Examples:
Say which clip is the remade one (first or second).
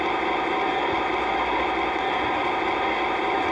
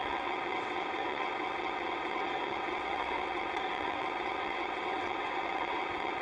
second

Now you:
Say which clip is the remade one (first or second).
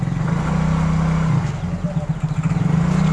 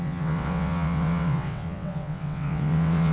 second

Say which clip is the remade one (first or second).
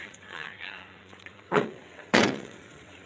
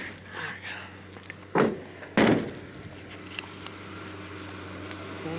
first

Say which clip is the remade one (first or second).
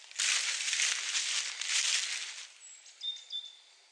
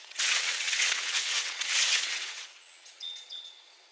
second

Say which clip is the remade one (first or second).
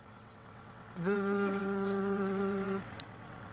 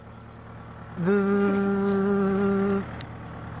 first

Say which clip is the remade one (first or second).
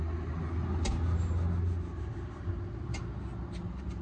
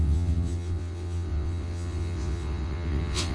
second